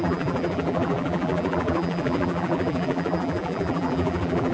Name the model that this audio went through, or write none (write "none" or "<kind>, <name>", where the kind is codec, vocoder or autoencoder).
vocoder, BigVGAN v2